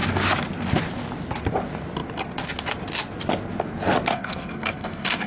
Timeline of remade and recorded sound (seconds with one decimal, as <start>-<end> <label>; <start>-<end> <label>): 0.0-4.1 recorded; 4.1-5.3 remade

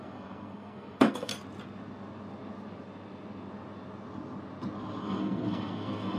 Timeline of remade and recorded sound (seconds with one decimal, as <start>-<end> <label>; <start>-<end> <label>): 0.0-1.3 remade; 1.3-5.0 recorded; 5.0-6.2 remade

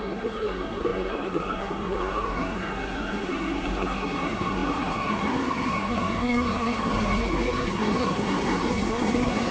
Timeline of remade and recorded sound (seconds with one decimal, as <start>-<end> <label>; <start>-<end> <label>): 0.0-9.5 remade